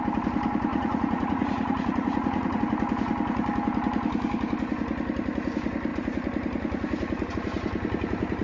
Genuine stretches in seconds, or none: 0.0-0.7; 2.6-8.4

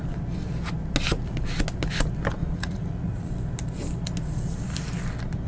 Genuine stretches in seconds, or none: 0.0-2.4; 3.3-5.5

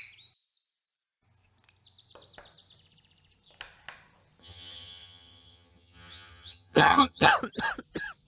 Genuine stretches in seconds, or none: 0.0-4.4; 7.3-8.3

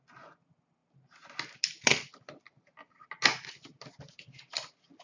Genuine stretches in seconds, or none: 0.0-5.0

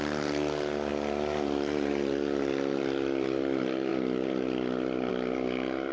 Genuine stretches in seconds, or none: 0.0-3.9; 5.1-5.9

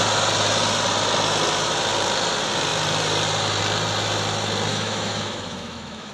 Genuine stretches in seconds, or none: 0.0-4.7

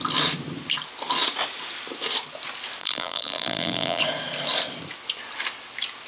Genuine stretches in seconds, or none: 0.0-2.8; 4.0-6.1